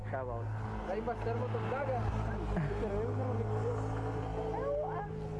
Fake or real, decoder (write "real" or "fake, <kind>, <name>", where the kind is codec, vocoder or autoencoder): real